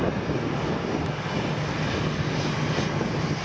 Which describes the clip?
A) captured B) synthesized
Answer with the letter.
A